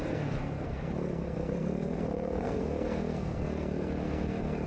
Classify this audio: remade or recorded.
remade